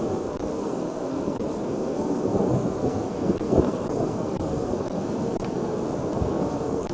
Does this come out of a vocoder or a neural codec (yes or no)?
yes